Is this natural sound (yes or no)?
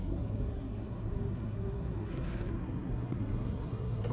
no